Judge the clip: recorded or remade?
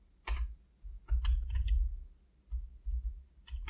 recorded